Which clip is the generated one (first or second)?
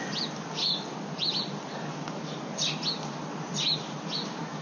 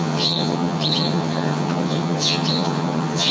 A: second